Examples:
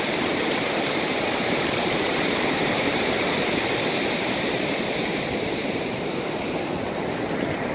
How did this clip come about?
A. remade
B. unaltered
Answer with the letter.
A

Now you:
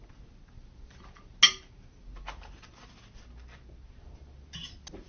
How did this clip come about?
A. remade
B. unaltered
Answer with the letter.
B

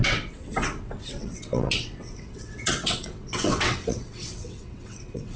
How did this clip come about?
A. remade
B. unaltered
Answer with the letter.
A